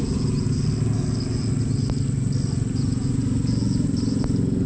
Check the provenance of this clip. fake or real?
real